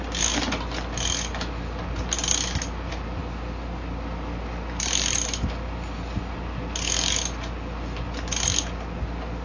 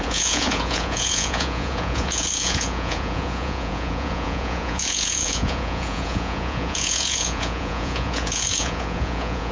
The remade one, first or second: second